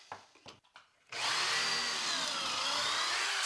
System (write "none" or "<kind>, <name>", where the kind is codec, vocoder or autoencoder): none